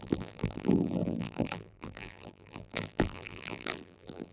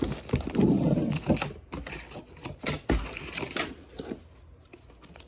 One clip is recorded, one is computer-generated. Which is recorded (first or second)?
second